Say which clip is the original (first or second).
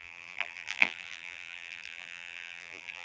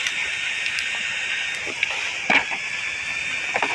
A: second